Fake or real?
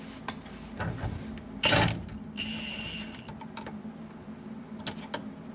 real